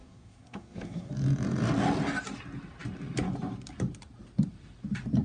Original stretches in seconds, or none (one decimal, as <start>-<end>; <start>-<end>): 1.1-5.2